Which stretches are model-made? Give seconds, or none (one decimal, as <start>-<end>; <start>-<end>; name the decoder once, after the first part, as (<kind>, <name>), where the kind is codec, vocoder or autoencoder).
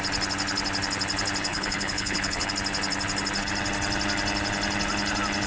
1.5-2.5 (codec, HILCodec)